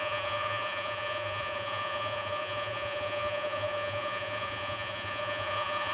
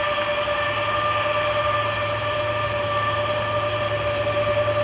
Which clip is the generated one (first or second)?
first